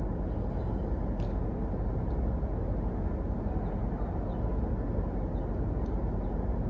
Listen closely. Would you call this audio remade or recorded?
recorded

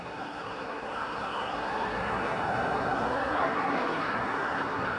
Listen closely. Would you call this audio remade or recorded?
remade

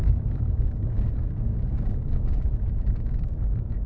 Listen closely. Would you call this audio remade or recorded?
remade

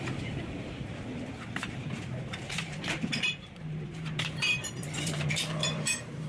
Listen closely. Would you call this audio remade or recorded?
remade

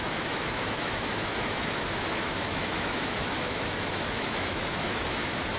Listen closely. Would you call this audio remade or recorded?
remade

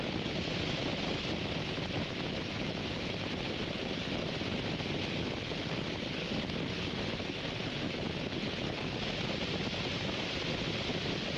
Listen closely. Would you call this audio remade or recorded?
recorded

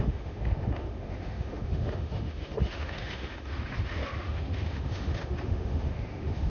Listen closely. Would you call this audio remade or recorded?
remade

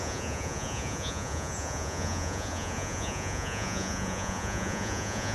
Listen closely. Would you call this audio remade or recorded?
remade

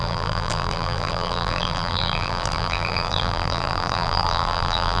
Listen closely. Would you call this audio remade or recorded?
remade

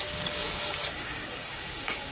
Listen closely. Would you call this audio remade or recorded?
remade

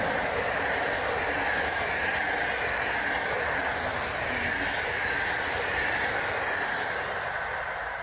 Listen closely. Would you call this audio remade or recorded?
recorded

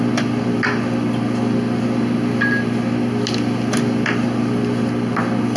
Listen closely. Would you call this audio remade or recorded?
recorded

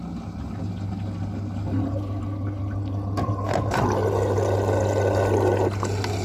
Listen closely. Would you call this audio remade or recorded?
recorded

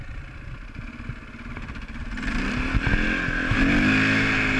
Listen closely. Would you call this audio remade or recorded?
recorded